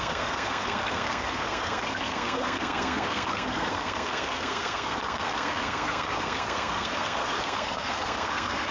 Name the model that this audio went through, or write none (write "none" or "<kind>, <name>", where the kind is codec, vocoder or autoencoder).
codec, SNAC